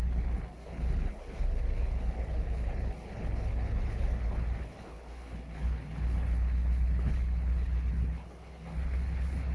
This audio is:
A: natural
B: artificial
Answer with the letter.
B